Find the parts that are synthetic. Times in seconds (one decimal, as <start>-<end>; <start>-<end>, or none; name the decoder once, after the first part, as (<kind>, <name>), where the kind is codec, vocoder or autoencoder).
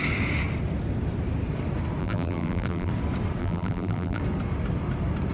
2.0-2.9 (vocoder, BigVGAN v2); 3.4-4.2